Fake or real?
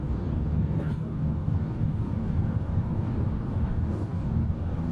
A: fake